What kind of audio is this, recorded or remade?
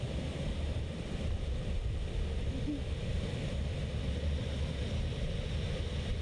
recorded